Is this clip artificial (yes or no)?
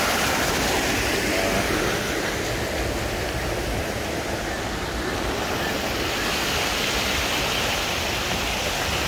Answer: no